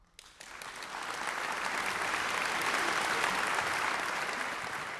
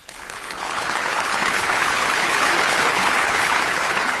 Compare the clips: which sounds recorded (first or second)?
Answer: first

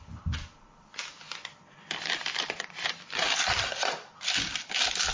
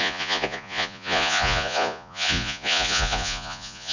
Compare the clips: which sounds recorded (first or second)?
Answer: first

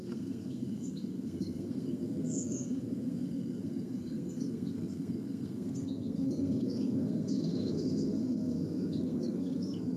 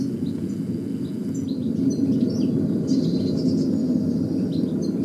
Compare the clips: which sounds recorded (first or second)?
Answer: second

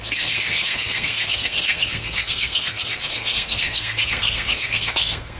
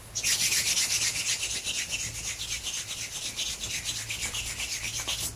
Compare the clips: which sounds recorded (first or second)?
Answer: second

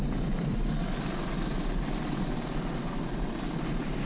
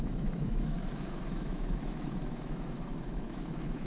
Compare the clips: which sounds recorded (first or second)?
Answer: first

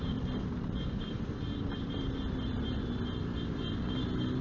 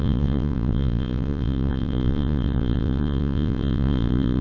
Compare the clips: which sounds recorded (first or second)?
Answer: first